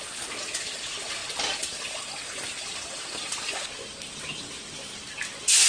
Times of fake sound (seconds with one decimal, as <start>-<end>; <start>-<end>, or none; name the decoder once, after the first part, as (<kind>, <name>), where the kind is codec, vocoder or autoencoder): none